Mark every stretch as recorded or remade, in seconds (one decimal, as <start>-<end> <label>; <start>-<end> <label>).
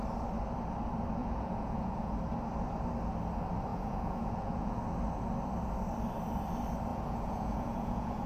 0.0-1.2 recorded; 1.2-2.1 remade; 2.1-3.7 recorded; 3.7-4.8 remade; 4.8-6.9 recorded; 6.9-8.3 remade